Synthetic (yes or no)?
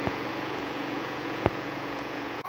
yes